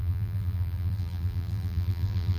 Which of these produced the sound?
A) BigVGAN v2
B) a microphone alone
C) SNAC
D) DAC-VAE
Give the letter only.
A